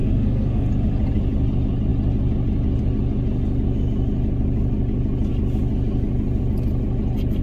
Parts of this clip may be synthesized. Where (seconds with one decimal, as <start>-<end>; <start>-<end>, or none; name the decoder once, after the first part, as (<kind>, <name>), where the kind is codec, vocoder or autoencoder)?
0.0-0.7 (codec, SNAC)